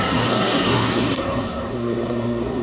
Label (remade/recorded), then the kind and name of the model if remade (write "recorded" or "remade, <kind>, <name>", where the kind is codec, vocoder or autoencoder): remade, codec, SNAC